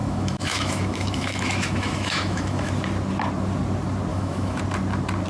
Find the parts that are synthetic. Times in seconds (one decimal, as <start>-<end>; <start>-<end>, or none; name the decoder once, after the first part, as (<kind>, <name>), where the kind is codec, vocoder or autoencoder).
0.0-2.7 (autoencoder, DAC-VAE); 4.1-4.6